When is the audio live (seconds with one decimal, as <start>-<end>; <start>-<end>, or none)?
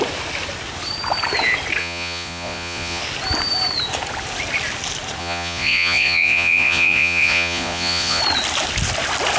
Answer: 0.0-1.8; 3.0-5.2; 8.2-9.4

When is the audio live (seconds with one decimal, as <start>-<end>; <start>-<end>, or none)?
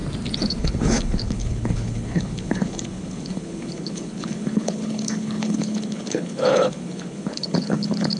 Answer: 0.0-0.6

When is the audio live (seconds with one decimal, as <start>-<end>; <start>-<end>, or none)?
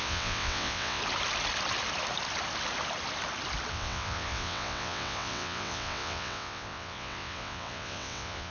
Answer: 1.0-3.7